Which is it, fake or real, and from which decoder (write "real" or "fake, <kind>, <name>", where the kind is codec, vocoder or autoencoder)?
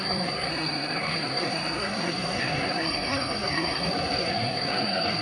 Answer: fake, codec, SNAC